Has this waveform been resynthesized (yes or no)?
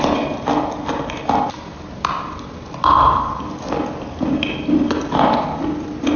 no